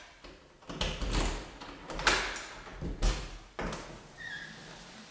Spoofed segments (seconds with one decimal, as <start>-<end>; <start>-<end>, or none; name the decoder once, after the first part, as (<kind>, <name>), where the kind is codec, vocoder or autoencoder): none